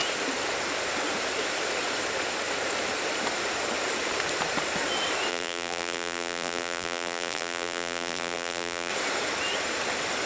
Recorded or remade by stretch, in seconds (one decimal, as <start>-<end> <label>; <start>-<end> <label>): 0.0-5.3 recorded; 5.3-8.9 remade; 8.9-10.3 recorded